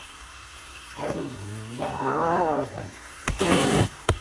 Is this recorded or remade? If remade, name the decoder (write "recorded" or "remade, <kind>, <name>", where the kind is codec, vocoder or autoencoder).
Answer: remade, codec, SNAC